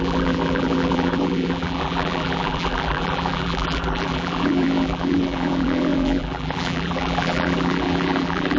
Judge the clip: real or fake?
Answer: fake